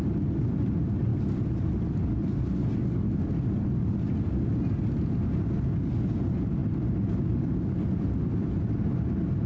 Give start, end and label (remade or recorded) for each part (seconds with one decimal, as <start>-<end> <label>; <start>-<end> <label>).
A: 0.0-9.5 recorded